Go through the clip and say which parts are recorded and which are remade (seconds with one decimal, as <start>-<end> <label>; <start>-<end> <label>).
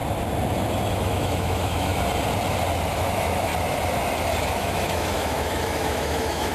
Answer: 0.0-0.9 recorded; 0.9-1.9 remade; 1.9-2.9 recorded; 2.9-3.5 remade; 3.5-4.4 recorded; 4.4-6.5 remade